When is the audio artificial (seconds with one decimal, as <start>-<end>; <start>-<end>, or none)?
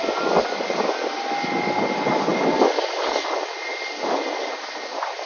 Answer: none